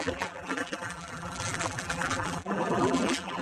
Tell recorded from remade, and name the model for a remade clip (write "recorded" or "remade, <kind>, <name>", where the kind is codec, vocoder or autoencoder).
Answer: remade, vocoder, BigVGAN v2